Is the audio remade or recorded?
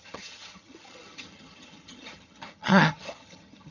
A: remade